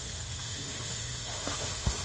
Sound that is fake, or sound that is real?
fake